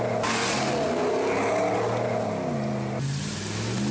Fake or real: real